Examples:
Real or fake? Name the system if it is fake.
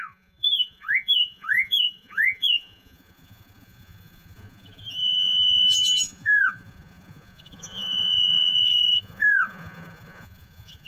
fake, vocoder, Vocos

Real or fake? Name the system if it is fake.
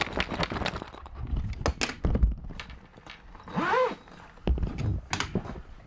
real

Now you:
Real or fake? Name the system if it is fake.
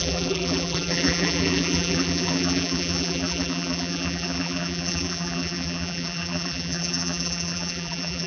fake, vocoder, BigVGAN v2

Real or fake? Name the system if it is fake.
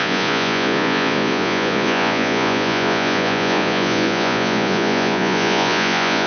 fake, vocoder, Vocos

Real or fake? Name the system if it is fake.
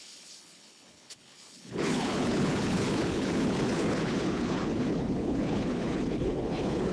fake, codec, HILCodec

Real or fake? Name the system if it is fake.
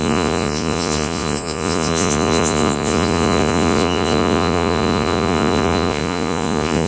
fake, vocoder, Vocos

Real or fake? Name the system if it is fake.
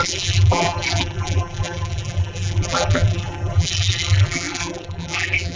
fake, vocoder, BigVGAN v2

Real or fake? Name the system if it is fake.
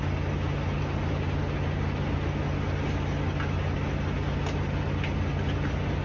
real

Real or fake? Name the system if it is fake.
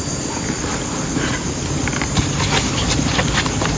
real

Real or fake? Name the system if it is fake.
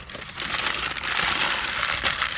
real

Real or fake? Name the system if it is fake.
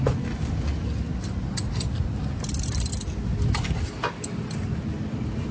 real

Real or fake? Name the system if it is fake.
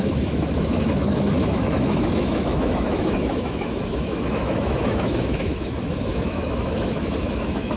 fake, autoencoder, DAC-VAE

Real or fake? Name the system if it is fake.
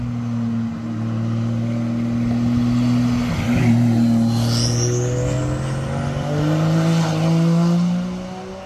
real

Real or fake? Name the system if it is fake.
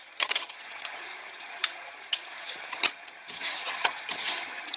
fake, vocoder, HiFi-GAN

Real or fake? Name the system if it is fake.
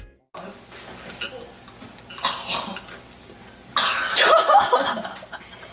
real